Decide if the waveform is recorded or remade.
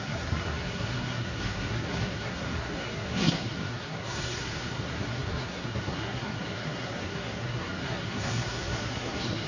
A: remade